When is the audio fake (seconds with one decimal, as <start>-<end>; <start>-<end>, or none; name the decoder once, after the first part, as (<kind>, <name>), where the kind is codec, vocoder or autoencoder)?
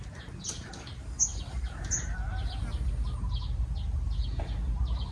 none